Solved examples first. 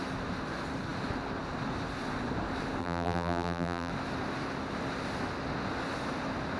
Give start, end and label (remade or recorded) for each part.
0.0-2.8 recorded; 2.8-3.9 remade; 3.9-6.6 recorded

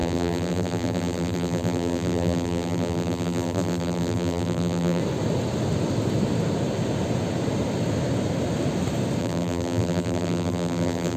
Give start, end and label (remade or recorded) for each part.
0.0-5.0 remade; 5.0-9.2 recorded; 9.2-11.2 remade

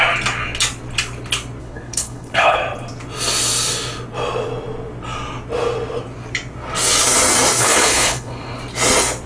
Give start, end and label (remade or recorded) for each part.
0.0-1.6 recorded; 1.6-2.6 remade; 2.6-7.6 recorded; 7.6-8.6 remade; 8.6-9.3 recorded

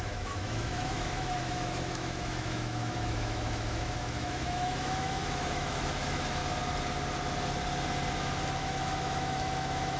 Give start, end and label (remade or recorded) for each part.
0.0-6.4 remade; 6.4-8.6 recorded; 8.6-10.0 remade

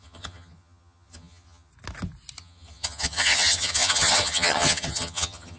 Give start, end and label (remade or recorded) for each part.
0.0-1.7 remade; 1.7-2.4 recorded; 2.4-5.6 remade